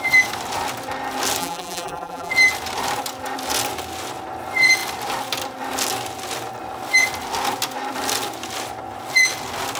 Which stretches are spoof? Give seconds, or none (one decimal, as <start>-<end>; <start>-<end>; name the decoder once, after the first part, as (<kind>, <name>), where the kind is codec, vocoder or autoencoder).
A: 1.4-2.3 (vocoder, BigVGAN v2)